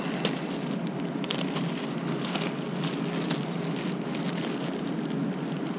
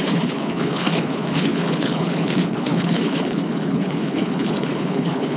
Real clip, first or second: first